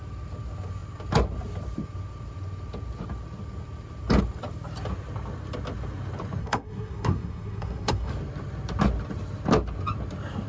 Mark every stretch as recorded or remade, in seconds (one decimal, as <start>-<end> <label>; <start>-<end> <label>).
0.0-6.4 recorded; 6.4-8.1 remade; 8.1-10.5 recorded